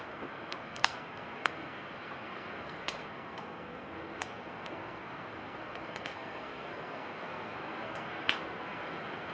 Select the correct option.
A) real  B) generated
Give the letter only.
B